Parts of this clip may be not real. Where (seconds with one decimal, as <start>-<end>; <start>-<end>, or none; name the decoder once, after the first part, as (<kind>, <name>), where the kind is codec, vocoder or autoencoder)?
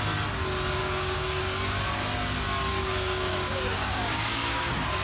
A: 0.8-1.4 (codec, DAC); 2.7-4.6